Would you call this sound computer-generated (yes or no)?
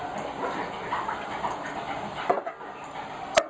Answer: no